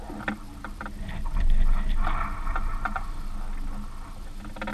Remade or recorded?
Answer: recorded